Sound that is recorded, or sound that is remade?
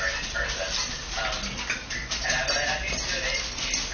recorded